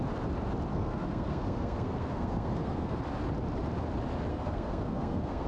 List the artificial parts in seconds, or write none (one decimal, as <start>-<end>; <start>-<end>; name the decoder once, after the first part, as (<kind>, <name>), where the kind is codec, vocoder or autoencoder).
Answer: 0.7-3.0 (codec, SNAC); 4.3-5.5